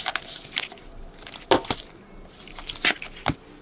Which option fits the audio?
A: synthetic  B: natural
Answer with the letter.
B